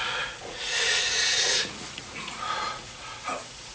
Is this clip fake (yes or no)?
yes